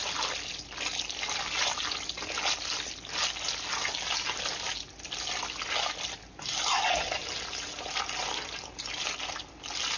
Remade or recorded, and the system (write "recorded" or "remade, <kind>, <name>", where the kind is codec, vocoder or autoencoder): recorded